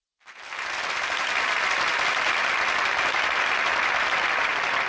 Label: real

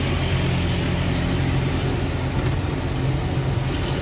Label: real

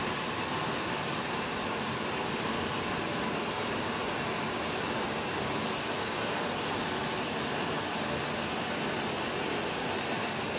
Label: real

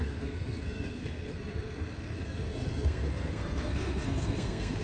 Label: fake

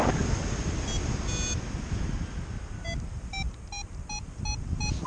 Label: real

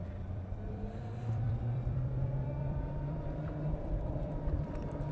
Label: fake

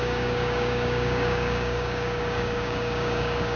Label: fake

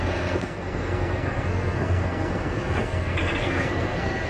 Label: fake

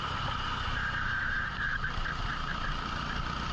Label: real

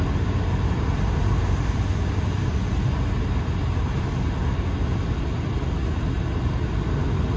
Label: real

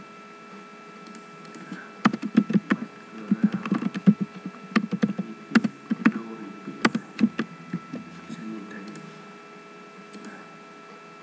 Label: real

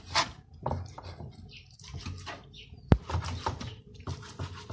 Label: real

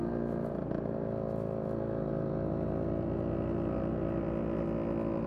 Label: real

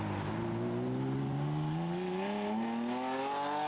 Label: real